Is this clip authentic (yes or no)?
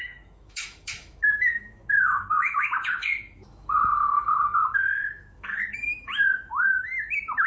no